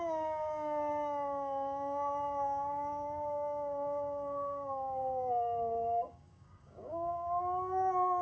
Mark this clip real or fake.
fake